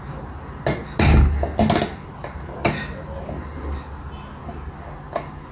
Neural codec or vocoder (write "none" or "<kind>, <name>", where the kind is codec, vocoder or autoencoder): none